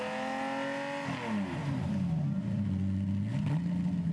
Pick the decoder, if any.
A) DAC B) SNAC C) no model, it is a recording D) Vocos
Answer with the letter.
C